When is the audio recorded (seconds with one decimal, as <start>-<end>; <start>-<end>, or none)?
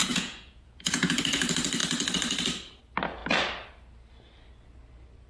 1.1-5.3